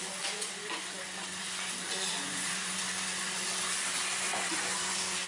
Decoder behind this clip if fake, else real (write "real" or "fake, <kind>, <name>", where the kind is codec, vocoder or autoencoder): fake, vocoder, Vocos